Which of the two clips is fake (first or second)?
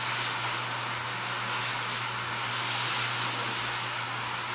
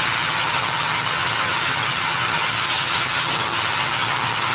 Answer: second